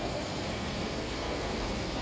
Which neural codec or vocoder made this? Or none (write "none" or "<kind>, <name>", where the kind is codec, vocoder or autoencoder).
codec, SNAC